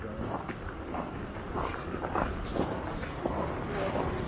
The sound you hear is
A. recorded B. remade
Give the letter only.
A